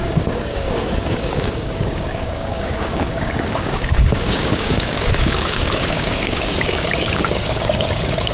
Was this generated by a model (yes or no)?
yes